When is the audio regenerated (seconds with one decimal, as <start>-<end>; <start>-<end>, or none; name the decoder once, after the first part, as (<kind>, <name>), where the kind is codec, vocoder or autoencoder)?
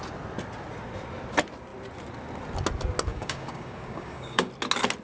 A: 3.1-4.5 (codec, DAC)